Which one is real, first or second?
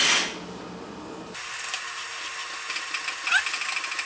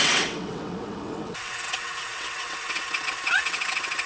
first